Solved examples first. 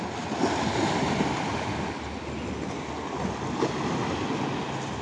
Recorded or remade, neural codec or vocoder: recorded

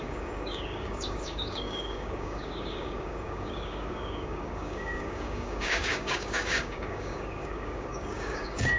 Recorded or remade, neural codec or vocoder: remade, codec, DAC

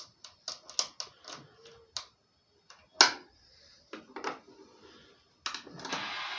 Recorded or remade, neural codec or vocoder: recorded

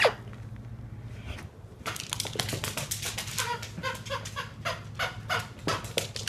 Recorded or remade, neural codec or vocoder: recorded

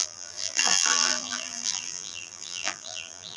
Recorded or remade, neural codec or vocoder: remade, vocoder, BigVGAN v2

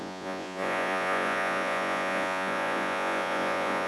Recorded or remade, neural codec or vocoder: remade, vocoder, Vocos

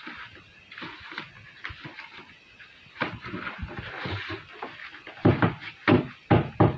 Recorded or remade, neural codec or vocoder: recorded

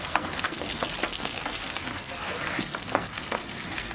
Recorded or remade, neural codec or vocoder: remade, codec, SNAC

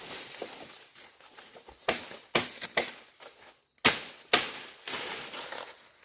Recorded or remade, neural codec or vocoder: recorded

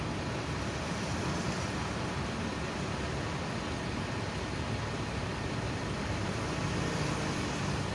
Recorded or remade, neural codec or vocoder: recorded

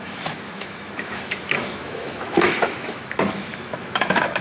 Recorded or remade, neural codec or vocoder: remade, autoencoder, DAC-VAE